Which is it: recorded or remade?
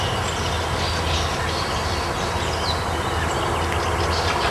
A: recorded